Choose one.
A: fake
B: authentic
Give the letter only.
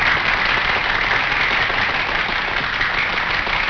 B